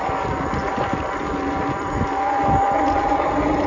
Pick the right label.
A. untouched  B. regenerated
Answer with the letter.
A